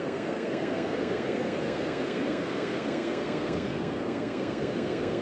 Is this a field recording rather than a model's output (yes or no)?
no